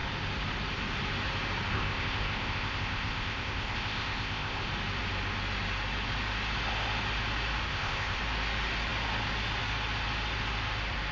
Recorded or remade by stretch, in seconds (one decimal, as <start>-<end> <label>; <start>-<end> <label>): 0.0-1.7 recorded; 1.7-4.7 remade; 4.7-7.7 recorded; 7.7-8.2 remade; 8.2-11.1 recorded